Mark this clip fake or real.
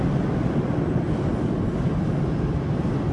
real